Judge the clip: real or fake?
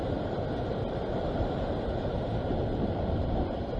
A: fake